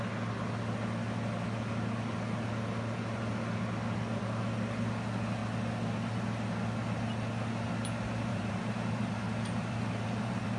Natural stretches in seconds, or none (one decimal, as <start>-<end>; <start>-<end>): 0.0-8.3